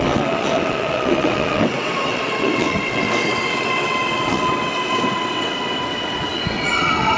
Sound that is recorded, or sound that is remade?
remade